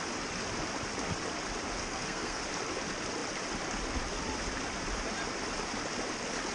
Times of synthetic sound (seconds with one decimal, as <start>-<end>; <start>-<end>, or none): 1.8-2.4